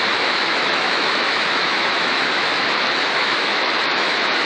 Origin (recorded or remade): remade